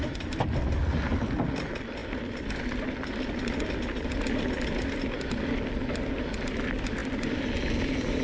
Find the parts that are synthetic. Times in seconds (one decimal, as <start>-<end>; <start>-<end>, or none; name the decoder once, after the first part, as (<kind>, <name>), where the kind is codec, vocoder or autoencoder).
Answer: none